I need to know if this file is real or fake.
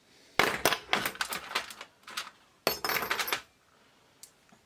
real